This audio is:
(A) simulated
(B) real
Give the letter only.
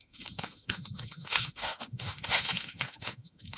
A